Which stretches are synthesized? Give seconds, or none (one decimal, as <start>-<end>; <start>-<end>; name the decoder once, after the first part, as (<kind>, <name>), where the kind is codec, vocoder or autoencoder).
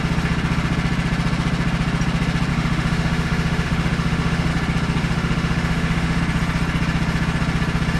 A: 2.5-4.5 (autoencoder, DAC-VAE); 5.0-6.2